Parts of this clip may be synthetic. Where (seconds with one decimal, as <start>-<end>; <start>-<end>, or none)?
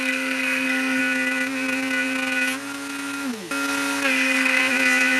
0.0-1.0; 4.1-4.6